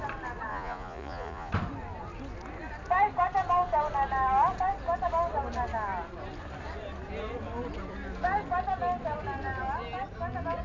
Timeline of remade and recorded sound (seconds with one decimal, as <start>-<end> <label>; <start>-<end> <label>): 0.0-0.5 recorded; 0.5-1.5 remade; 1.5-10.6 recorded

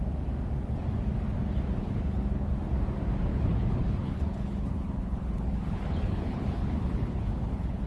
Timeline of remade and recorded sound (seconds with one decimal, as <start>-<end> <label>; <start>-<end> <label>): 0.0-1.8 recorded; 1.8-2.5 remade; 2.5-3.3 recorded; 3.3-7.9 remade

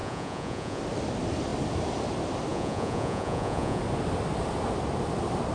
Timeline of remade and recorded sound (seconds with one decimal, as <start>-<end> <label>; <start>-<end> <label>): 0.0-0.8 remade; 0.8-2.5 recorded; 2.5-3.8 remade; 3.8-5.5 recorded

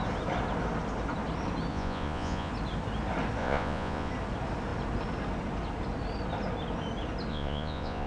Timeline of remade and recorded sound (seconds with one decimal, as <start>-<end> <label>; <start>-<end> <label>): 0.0-1.7 recorded; 1.7-2.5 remade; 2.5-3.4 recorded; 3.4-4.1 remade; 4.1-7.3 recorded; 7.3-8.1 remade

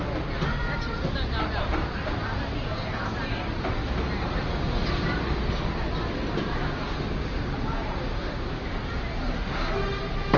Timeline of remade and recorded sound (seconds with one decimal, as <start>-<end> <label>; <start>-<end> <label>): 0.0-9.2 recorded; 9.2-9.7 remade; 9.7-10.4 recorded

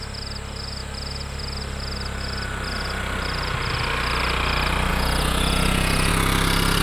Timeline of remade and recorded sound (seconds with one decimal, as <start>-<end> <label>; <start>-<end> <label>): 0.0-4.9 recorded; 4.9-6.1 remade; 6.1-6.8 recorded